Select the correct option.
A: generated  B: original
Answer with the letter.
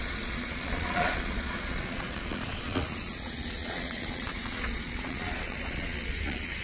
A